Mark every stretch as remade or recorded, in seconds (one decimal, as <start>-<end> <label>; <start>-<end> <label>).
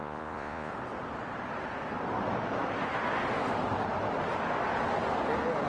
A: 0.0-0.7 remade; 0.7-5.7 recorded